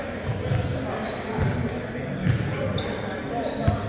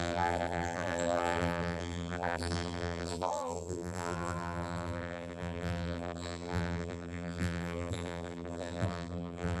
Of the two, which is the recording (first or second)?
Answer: first